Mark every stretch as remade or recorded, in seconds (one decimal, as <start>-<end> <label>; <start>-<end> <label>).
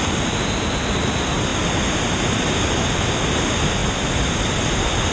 0.0-5.1 recorded